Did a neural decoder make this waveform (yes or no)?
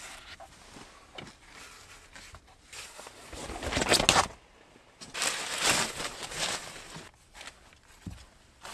no